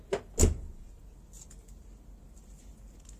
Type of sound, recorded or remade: recorded